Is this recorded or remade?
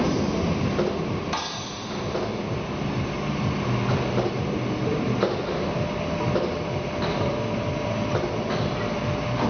recorded